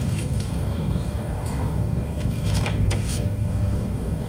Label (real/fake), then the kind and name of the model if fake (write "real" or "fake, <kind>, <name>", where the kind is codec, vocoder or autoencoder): fake, codec, DAC